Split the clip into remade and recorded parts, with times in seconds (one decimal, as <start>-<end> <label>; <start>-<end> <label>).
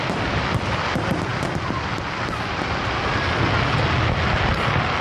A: 0.0-5.0 recorded